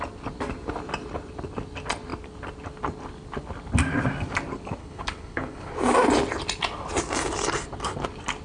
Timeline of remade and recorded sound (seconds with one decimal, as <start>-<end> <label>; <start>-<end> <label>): 0.0-4.8 recorded; 4.8-5.7 remade; 5.7-8.4 recorded

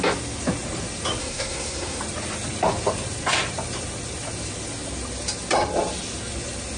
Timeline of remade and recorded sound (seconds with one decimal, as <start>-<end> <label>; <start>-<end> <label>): 0.0-1.2 recorded; 1.2-2.0 remade; 2.0-6.8 recorded